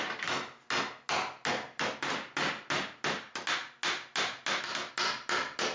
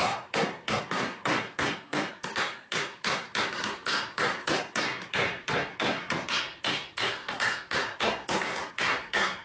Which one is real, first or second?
first